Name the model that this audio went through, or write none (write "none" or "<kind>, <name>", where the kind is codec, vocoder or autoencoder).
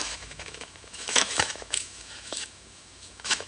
autoencoder, DAC-VAE